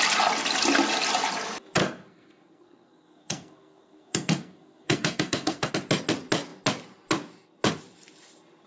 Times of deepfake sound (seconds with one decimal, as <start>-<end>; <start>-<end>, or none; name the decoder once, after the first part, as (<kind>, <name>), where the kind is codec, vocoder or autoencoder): 1.8-5.7 (codec, SNAC)